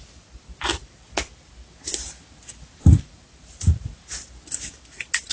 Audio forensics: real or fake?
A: real